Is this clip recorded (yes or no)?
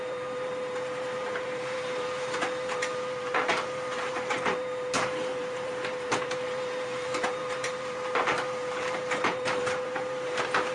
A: no